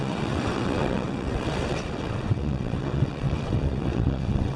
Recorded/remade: remade